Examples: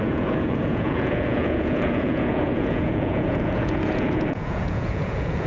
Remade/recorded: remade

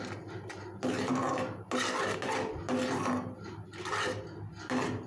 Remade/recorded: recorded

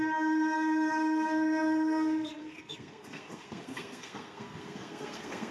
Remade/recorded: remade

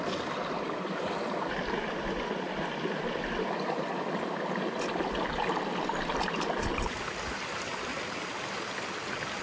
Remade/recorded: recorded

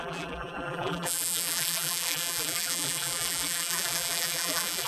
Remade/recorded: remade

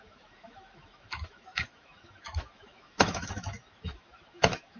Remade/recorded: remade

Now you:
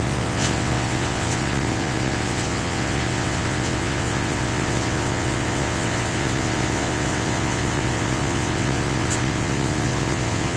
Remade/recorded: remade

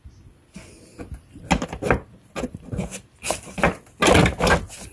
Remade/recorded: recorded